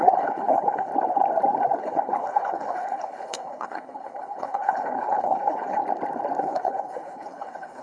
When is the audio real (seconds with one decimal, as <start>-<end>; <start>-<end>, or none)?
0.9-1.8; 5.8-6.4